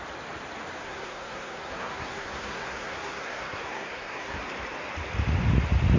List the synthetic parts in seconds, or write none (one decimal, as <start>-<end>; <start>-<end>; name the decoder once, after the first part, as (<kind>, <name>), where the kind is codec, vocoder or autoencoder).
0.8-4.4 (codec, SNAC)